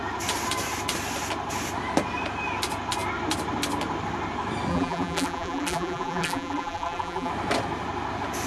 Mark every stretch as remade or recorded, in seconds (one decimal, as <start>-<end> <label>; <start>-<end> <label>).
0.0-4.7 recorded; 4.7-7.3 remade; 7.3-8.5 recorded